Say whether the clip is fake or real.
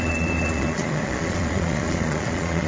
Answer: fake